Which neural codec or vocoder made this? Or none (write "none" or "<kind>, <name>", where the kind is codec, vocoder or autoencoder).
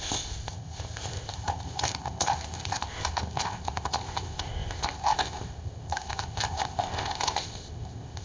codec, ZipCodec